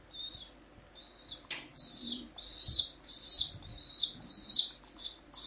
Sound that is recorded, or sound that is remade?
recorded